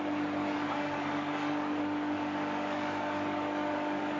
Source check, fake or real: fake